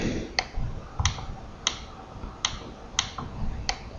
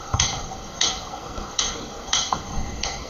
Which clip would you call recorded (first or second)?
first